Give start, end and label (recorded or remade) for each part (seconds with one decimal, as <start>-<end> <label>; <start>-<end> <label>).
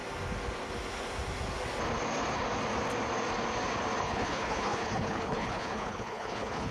0.0-4.0 recorded; 4.0-6.7 remade